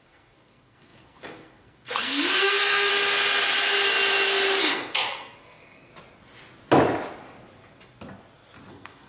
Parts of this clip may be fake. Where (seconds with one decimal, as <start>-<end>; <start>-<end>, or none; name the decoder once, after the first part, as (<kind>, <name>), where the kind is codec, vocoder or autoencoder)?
0.0-2.9 (codec, SNAC); 4.6-5.9; 8.7-9.1